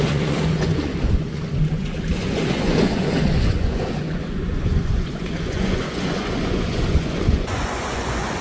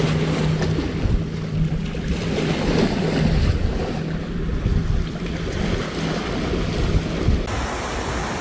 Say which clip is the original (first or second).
second